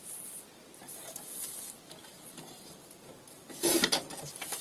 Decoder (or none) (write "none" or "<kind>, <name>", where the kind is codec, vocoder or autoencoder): none